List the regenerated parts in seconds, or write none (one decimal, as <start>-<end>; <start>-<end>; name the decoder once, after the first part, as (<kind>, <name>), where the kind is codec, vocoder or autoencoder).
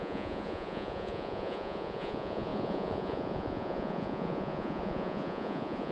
0.0-5.9 (vocoder, Vocos)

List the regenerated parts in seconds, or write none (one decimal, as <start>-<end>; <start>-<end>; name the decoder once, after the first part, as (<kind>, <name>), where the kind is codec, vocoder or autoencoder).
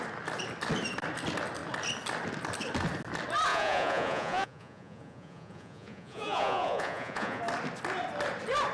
3.5-7.4 (vocoder, Vocos)